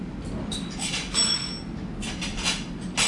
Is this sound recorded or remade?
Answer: recorded